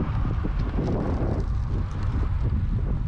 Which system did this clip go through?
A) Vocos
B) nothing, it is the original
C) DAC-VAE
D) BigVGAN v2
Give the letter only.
B